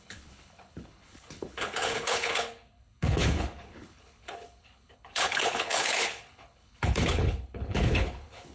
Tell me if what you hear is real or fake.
fake